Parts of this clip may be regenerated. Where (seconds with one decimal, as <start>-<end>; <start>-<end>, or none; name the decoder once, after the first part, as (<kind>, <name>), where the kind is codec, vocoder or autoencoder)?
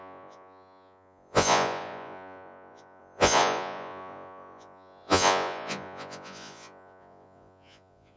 0.0-8.2 (vocoder, Vocos)